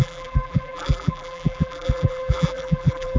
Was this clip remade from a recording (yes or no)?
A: yes